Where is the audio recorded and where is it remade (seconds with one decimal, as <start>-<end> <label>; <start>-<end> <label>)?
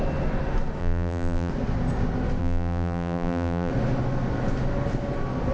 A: 0.0-0.8 recorded; 0.8-1.5 remade; 1.5-2.4 recorded; 2.4-3.7 remade; 3.7-5.5 recorded